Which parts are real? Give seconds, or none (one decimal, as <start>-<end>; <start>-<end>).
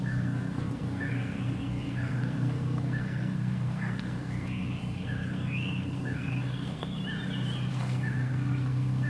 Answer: 7.0-7.7